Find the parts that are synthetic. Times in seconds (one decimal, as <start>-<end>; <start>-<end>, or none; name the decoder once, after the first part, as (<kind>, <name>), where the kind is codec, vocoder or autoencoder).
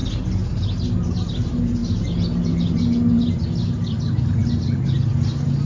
none